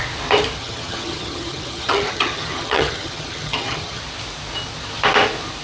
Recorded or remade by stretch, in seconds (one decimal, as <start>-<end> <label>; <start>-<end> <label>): 0.0-0.6 recorded; 0.6-4.0 remade; 4.0-5.6 recorded